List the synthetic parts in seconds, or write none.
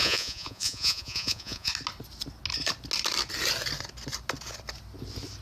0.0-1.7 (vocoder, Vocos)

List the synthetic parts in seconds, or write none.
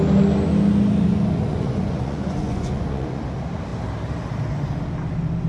1.5-3.2 (vocoder, Vocos)